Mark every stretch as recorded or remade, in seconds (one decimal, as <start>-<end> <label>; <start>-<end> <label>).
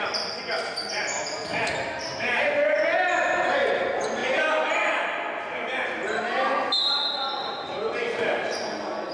0.0-9.1 recorded